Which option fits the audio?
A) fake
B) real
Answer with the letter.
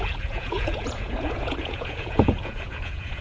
A